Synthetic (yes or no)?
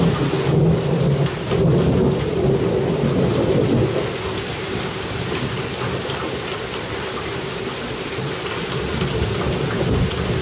no